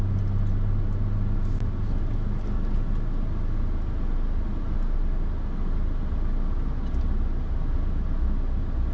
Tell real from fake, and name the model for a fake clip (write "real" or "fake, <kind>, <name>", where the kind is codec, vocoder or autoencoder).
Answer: real